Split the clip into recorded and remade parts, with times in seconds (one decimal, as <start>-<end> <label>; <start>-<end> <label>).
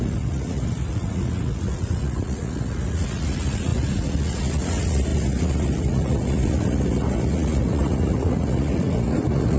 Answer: 0.0-9.6 remade